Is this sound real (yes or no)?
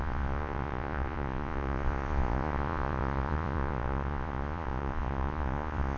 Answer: no